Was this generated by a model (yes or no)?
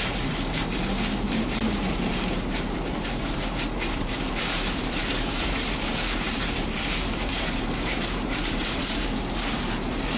yes